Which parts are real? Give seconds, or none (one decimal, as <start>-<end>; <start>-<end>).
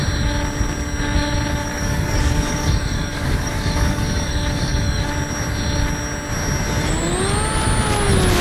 0.0-1.6; 5.1-8.4